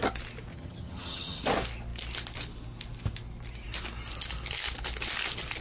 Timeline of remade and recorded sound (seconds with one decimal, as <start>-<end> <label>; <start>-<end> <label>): 0.0-0.5 recorded; 0.5-1.4 remade; 1.4-5.6 recorded